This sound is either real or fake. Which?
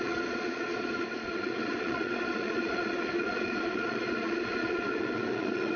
fake